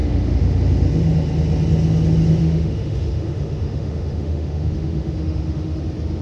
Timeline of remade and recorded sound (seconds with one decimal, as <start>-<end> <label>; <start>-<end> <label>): 0.0-0.6 remade; 0.6-2.4 recorded; 2.4-5.8 remade; 5.8-6.2 recorded